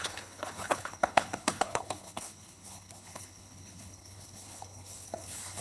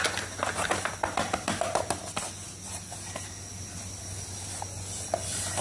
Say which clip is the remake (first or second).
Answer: first